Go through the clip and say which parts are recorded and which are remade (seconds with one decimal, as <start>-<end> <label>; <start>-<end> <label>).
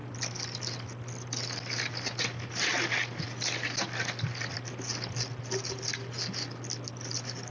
0.0-7.5 recorded